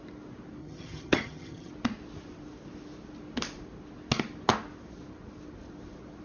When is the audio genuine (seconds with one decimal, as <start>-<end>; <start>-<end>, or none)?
0.0-0.6; 1.7-6.2